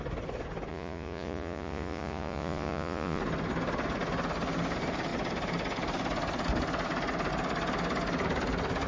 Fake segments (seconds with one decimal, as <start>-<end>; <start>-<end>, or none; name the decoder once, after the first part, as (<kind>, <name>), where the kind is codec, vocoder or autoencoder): 0.7-3.2 (vocoder, Vocos)